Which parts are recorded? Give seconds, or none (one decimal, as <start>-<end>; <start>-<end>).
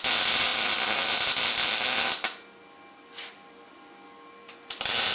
0.0-5.1